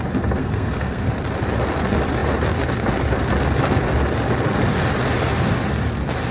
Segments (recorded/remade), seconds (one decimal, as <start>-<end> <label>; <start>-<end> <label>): 0.0-0.4 recorded; 0.4-1.1 remade; 1.1-6.3 recorded